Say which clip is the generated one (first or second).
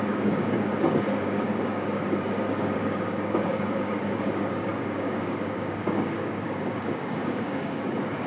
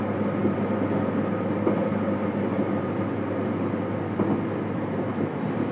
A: first